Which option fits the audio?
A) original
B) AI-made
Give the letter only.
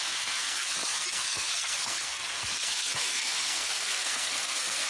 B